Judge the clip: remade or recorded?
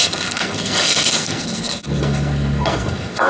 remade